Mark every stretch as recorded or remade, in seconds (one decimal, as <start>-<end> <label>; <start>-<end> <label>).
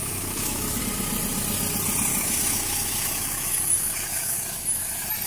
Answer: 0.0-0.8 remade; 0.8-2.1 recorded; 2.1-5.3 remade